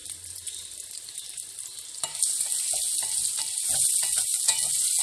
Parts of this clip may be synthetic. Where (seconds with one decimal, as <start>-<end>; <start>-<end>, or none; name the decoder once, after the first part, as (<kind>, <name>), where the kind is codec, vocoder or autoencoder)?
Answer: none